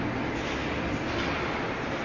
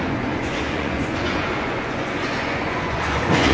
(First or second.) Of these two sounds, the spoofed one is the second